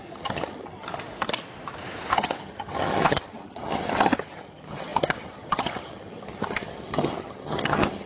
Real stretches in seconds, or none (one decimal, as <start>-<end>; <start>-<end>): 0.9-2.1